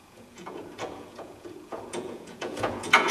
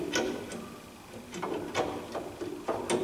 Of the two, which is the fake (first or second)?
first